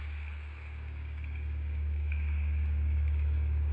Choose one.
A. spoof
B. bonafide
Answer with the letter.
A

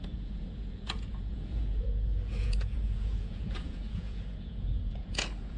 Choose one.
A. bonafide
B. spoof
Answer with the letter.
B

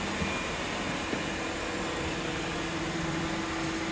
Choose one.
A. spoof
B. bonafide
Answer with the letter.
B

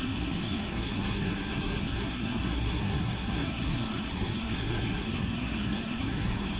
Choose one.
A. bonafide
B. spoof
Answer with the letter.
B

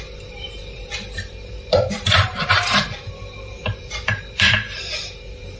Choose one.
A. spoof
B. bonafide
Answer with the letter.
A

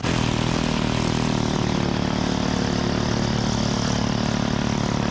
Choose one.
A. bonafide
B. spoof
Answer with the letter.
A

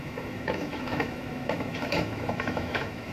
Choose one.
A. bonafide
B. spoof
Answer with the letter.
B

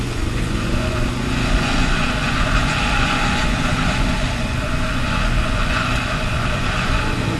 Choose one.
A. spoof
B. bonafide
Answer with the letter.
A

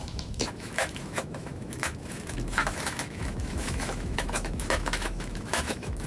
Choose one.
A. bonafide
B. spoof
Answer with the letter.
B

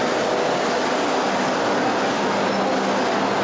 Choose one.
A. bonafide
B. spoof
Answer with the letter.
A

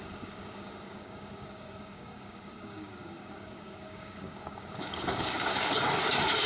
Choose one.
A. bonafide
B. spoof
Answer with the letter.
B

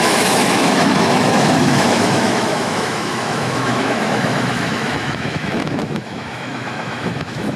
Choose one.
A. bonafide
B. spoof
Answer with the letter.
B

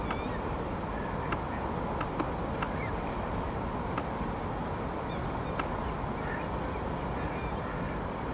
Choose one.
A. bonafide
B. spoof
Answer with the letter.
A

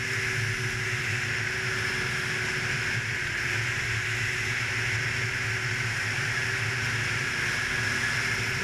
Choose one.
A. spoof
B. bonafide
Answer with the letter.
B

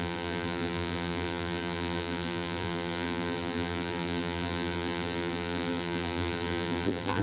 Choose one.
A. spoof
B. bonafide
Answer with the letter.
A